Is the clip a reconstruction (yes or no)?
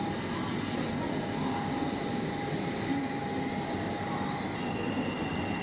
no